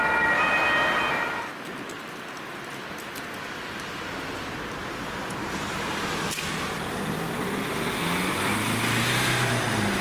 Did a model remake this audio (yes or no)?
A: no